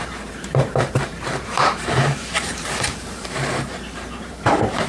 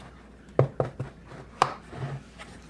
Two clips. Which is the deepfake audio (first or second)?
first